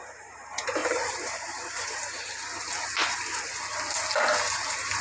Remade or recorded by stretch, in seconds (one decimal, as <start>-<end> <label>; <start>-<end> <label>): 0.0-0.8 recorded; 0.8-2.3 remade; 2.3-5.0 recorded